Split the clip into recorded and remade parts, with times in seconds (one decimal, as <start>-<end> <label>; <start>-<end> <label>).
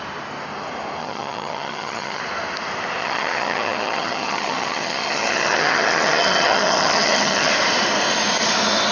0.0-1.0 recorded; 1.0-2.2 remade; 2.2-3.0 recorded; 3.0-7.5 remade; 7.5-8.9 recorded